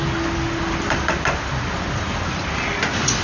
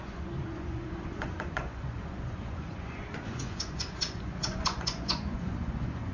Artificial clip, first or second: second